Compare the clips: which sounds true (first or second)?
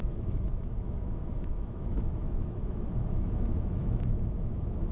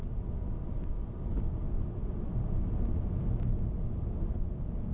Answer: second